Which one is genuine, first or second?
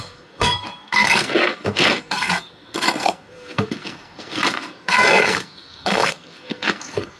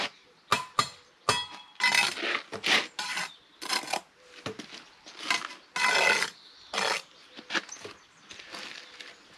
second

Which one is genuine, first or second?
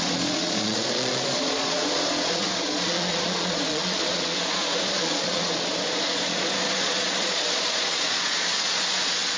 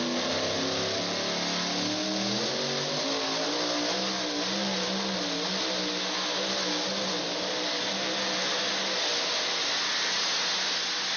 second